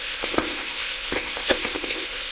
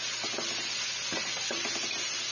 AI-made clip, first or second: first